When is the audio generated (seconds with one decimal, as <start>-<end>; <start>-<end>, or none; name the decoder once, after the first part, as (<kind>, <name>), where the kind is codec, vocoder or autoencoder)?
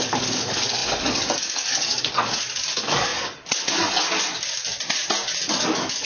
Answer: 0.0-3.1 (codec, DAC); 5.5-6.0